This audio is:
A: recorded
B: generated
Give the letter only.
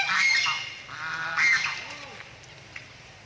A